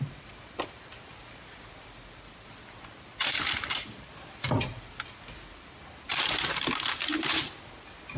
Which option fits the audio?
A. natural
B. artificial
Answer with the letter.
A